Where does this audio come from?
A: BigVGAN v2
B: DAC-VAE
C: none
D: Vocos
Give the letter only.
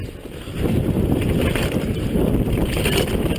C